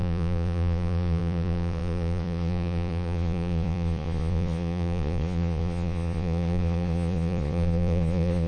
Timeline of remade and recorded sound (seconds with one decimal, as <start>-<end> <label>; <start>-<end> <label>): 0.0-8.5 remade